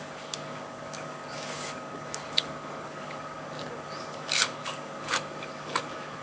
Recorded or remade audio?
remade